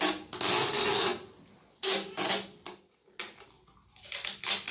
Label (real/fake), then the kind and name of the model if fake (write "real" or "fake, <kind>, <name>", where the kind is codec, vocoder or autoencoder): real